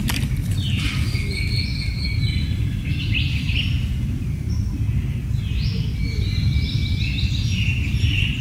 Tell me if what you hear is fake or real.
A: real